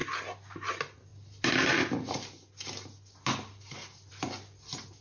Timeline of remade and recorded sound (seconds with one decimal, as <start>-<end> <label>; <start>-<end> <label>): 0.0-5.0 recorded